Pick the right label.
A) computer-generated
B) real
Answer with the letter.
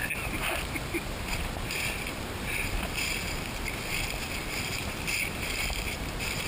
A